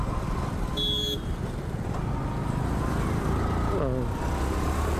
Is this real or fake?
real